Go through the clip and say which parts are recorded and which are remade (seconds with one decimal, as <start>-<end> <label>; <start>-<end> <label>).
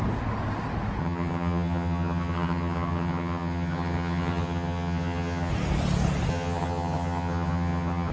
0.0-1.0 recorded; 1.0-5.5 remade; 5.5-6.3 recorded; 6.3-8.1 remade